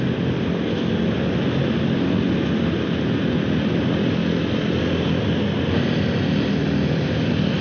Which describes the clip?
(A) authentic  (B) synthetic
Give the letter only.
A